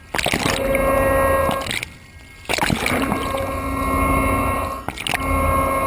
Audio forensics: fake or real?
real